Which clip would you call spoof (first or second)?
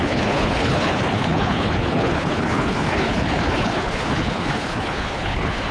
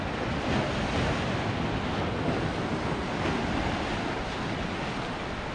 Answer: first